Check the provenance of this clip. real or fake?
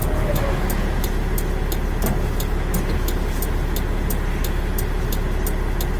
real